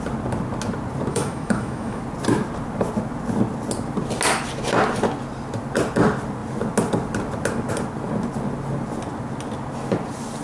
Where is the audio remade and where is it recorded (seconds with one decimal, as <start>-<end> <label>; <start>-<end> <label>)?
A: 0.0-1.1 recorded; 1.1-2.0 remade; 2.0-10.4 recorded